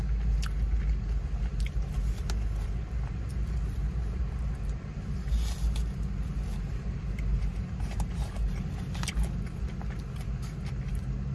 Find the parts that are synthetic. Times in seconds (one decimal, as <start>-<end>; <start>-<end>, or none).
7.3-9.1